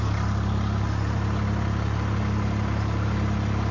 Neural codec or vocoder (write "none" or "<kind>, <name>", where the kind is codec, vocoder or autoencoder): none